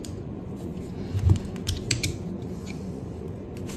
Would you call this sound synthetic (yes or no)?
yes